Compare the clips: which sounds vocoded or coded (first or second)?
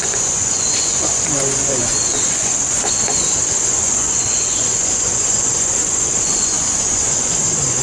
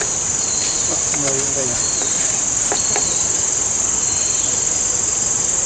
first